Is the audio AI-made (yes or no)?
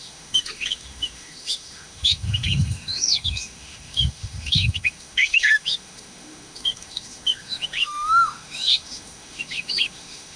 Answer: yes